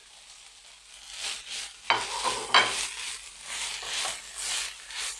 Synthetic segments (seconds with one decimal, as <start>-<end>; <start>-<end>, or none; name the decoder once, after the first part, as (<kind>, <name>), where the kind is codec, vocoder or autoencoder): none